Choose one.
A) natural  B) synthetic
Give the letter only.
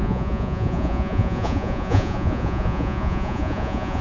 B